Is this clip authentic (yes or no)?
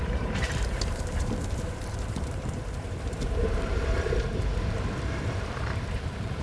no